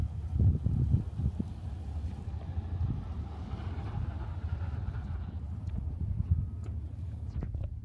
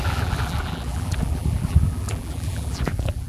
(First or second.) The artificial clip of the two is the second